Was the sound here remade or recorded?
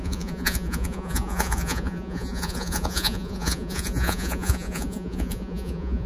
remade